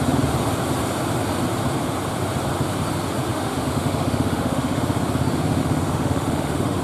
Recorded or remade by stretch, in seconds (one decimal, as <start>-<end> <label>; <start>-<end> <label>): 0.0-3.3 recorded; 3.3-4.8 remade; 4.8-5.6 recorded; 5.6-6.8 remade

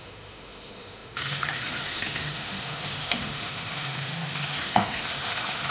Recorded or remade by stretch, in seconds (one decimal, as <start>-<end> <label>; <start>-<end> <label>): 0.0-5.7 remade

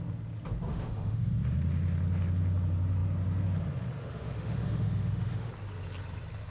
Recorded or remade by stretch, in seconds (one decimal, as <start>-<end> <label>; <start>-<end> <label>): 0.0-0.7 recorded; 0.7-1.3 remade; 1.3-4.0 recorded; 4.0-5.5 remade; 5.5-6.5 recorded

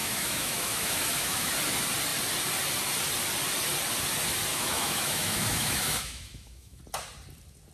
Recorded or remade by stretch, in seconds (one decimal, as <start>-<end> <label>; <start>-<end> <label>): 0.0-1.5 remade; 1.5-4.5 recorded; 4.5-6.8 remade; 6.8-7.7 recorded

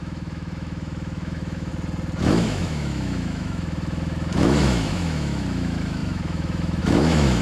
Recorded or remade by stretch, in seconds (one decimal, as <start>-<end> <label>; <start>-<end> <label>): 0.0-1.7 remade; 1.7-2.2 recorded; 2.2-7.4 remade

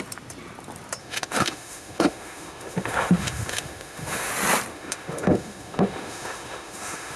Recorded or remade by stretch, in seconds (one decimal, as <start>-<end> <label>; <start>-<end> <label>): 0.0-1.0 recorded; 1.0-4.3 remade; 4.3-4.7 recorded; 4.7-7.2 remade